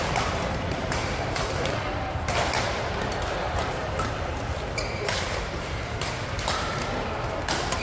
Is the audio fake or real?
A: fake